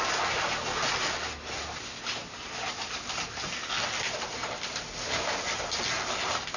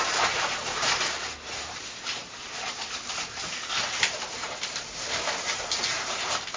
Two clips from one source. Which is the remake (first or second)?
second